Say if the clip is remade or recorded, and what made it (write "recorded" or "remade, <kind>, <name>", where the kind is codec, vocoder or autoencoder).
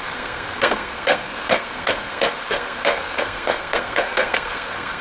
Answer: remade, codec, SNAC